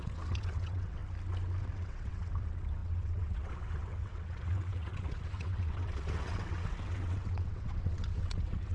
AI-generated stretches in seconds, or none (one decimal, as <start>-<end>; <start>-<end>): 0.0-1.0; 1.6-8.7